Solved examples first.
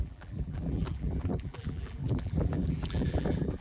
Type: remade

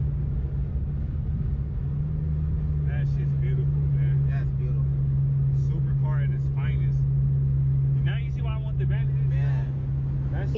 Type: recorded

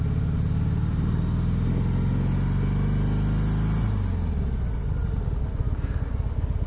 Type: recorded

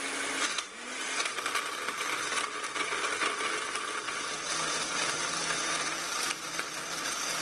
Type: recorded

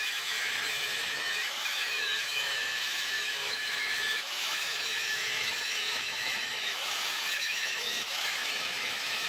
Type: remade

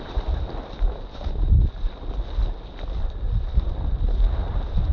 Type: recorded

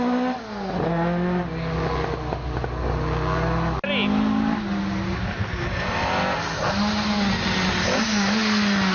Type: recorded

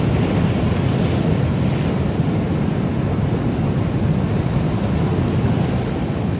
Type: recorded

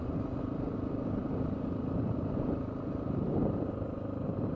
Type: remade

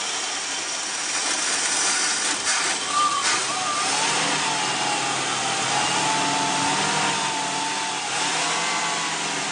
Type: recorded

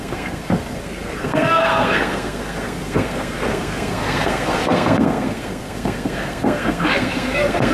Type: remade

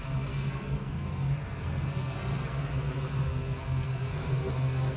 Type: remade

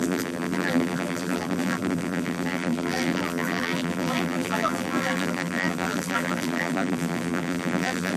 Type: remade